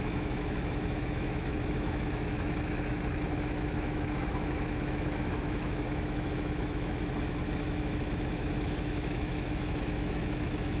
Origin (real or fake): fake